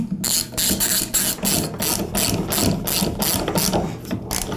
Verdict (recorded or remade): recorded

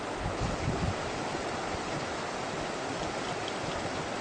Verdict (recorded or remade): recorded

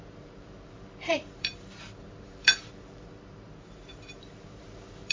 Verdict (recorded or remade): remade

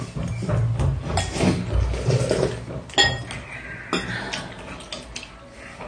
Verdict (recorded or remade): recorded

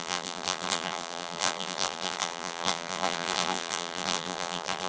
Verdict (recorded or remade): remade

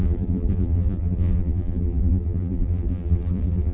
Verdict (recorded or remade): remade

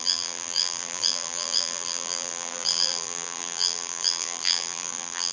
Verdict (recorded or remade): remade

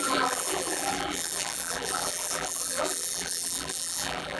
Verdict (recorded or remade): remade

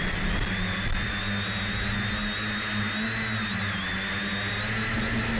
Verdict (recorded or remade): recorded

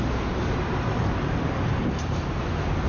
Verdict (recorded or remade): remade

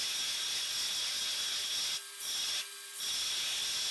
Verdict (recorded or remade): recorded